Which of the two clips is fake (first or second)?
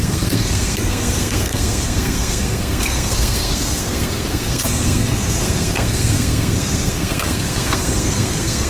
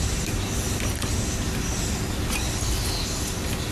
first